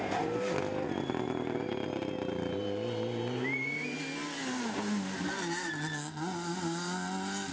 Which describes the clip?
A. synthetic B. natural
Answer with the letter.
B